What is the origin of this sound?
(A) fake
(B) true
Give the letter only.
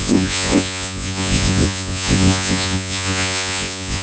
A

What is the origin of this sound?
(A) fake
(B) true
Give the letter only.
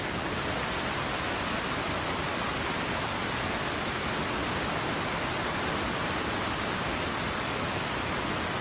B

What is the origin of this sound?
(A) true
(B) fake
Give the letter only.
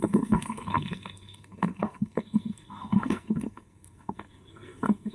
B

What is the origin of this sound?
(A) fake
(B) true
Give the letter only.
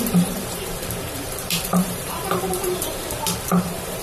A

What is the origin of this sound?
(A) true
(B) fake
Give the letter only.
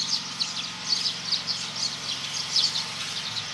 A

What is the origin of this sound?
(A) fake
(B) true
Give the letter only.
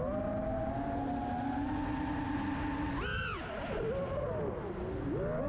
B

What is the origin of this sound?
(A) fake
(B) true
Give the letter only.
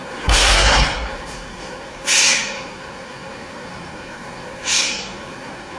A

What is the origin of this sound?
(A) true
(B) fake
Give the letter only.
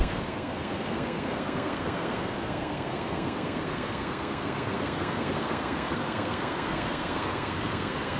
B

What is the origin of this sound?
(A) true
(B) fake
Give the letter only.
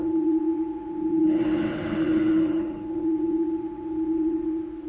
B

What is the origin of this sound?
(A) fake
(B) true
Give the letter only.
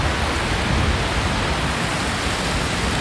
B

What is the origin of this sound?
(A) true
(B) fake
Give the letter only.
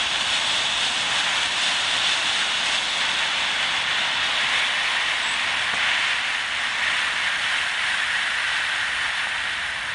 A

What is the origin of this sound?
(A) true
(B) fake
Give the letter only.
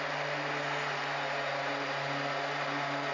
A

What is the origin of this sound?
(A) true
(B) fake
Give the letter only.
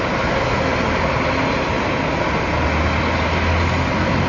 A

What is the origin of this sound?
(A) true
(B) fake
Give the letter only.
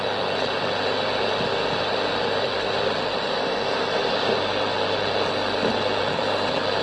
A